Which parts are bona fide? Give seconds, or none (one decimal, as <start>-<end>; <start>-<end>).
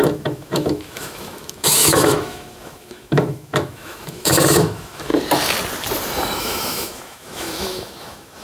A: 5.1-6.4